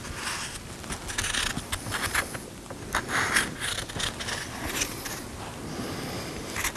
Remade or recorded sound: recorded